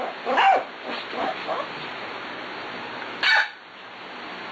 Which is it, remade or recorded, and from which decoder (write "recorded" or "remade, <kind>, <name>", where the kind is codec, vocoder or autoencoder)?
recorded